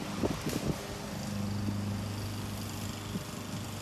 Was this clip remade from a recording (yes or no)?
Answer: no